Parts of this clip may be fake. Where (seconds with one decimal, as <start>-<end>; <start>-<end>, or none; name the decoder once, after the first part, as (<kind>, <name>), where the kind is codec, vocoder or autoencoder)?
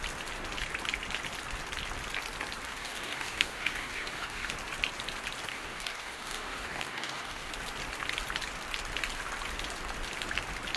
2.7-4.5 (codec, DAC); 5.5-7.5